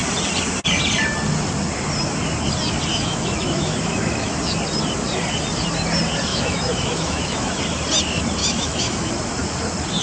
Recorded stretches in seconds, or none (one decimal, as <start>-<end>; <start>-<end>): 0.0-2.9; 4.4-6.3; 7.6-8.4; 9.1-10.0